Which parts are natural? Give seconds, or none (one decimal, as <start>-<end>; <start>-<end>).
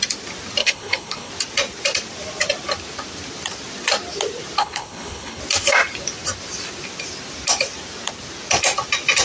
0.0-0.6; 1.3-4.6; 5.4-9.2